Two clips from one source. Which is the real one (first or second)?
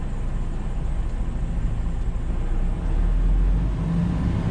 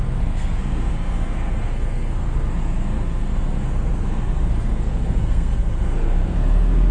first